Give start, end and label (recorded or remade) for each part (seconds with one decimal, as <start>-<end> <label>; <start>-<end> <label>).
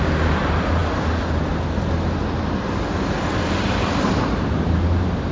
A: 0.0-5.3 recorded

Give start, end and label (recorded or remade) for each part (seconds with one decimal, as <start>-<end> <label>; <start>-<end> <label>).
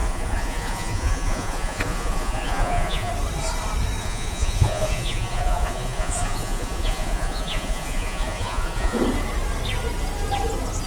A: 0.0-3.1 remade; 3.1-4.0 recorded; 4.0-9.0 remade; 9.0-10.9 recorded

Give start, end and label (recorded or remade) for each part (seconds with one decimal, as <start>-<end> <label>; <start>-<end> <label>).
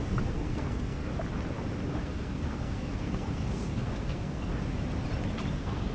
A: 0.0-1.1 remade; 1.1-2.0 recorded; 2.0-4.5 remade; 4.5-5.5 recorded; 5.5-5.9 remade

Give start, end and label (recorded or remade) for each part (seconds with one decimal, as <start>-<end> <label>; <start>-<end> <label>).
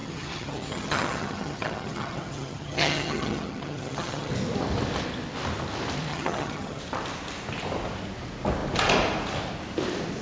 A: 0.0-4.3 remade; 4.3-6.1 recorded; 6.1-6.8 remade; 6.8-10.2 recorded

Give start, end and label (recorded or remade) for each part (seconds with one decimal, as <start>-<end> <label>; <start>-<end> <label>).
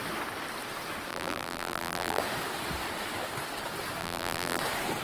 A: 0.0-1.1 recorded; 1.1-2.2 remade; 2.2-4.0 recorded; 4.0-4.6 remade; 4.6-5.0 recorded